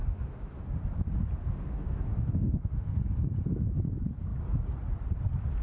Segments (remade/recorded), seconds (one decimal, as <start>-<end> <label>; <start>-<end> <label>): 0.0-0.6 remade; 0.6-1.4 recorded; 1.4-3.0 remade; 3.0-5.6 recorded